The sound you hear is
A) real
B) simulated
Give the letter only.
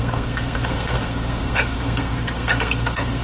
B